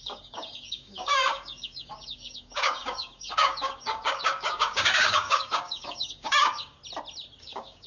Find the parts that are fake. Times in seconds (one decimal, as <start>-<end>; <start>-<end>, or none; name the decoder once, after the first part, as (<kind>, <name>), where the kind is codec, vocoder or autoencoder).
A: 0.0-6.8 (codec, DAC); 7.4-7.9